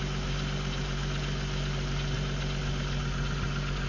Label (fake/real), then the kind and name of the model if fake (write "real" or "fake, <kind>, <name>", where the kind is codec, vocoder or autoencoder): real